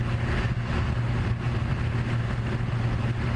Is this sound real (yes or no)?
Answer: yes